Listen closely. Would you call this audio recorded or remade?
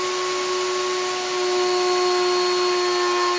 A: recorded